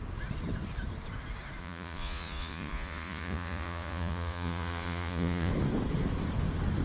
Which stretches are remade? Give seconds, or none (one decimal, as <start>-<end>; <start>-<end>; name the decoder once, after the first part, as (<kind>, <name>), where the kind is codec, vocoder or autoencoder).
1.6-5.5 (vocoder, Vocos)